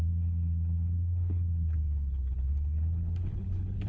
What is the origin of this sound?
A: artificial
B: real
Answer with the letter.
A